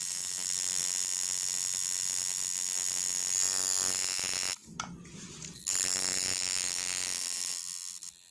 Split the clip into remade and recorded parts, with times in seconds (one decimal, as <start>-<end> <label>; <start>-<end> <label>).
0.0-4.6 recorded; 4.6-7.6 remade; 7.6-8.3 recorded